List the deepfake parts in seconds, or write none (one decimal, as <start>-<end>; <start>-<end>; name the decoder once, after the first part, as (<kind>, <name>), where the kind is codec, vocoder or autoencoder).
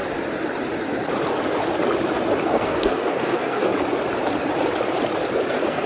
2.4-3.7 (codec, SNAC); 5.5-5.9